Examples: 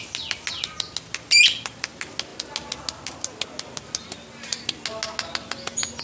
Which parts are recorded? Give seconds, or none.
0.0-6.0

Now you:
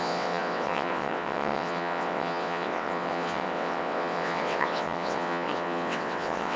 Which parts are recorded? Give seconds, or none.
none

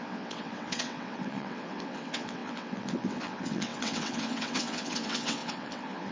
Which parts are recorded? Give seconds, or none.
none

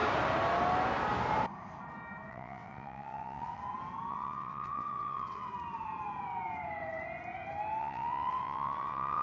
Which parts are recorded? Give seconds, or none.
0.0-2.3; 3.6-4.1; 5.5-7.8

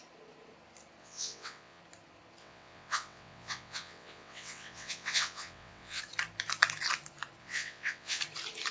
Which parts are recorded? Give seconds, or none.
0.0-1.0; 1.8-2.4; 6.0-7.4; 8.2-8.7

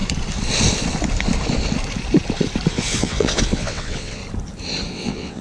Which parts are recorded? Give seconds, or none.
0.0-2.7; 4.2-4.9

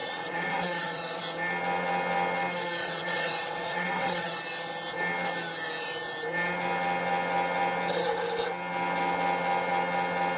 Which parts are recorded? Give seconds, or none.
1.2-2.8; 4.4-10.4